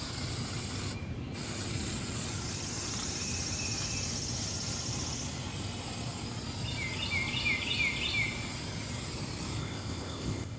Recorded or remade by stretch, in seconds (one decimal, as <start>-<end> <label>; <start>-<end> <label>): 0.0-9.6 recorded; 9.6-10.6 remade